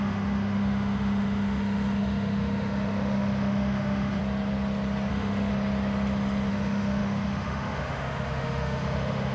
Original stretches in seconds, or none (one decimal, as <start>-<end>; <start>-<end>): 4.2-5.1; 5.5-6.5